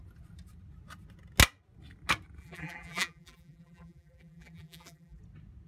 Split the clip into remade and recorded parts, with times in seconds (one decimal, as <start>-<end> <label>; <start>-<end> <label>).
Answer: 0.0-2.4 recorded; 2.4-5.2 remade; 5.2-5.7 recorded